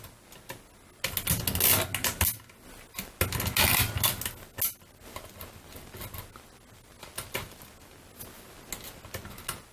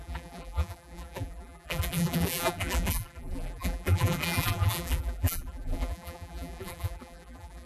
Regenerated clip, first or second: second